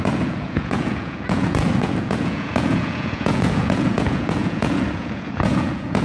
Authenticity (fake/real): fake